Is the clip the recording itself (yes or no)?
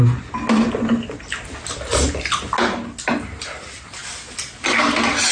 yes